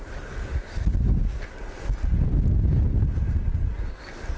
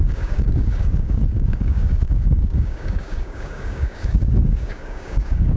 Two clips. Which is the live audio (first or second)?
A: first